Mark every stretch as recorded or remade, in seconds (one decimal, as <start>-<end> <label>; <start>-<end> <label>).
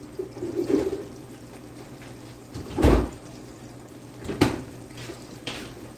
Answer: 0.0-2.4 recorded; 2.4-3.1 remade; 3.1-5.1 recorded; 5.1-6.0 remade